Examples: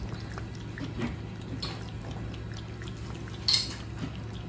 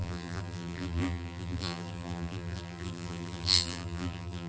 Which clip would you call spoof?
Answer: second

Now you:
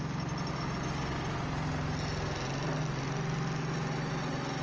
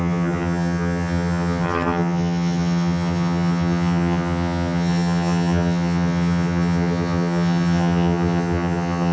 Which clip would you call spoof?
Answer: second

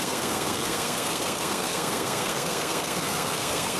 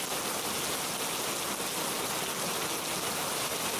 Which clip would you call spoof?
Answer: first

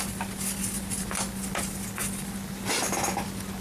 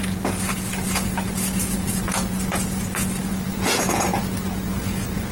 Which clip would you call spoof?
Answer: second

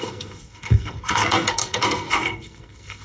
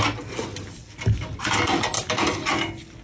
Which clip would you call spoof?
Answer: first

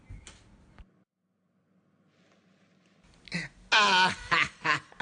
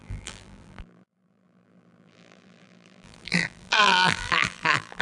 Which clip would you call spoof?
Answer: second